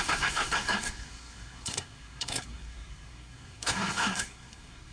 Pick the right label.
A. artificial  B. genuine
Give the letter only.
A